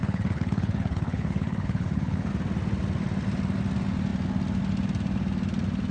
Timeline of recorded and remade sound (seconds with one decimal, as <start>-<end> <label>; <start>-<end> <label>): 0.0-2.3 remade; 2.3-5.9 recorded